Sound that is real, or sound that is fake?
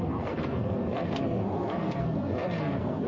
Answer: fake